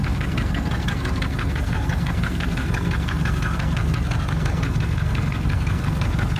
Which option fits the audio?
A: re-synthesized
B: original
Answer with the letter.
A